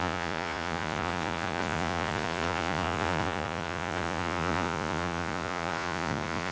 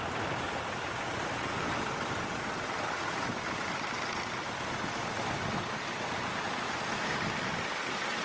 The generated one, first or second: first